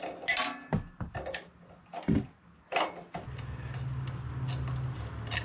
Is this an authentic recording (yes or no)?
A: yes